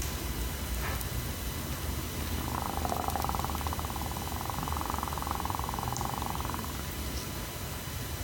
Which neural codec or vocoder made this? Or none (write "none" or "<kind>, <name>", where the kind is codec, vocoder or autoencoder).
none